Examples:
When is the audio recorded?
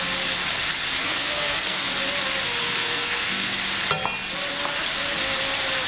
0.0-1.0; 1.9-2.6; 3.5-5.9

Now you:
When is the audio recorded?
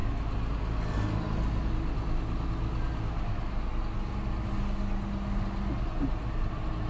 0.0-6.9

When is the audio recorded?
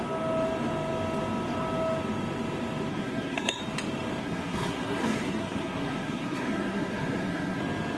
0.0-2.9; 3.6-4.2; 7.6-8.0